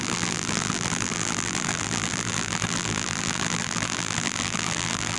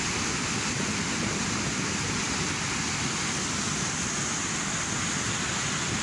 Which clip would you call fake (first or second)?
first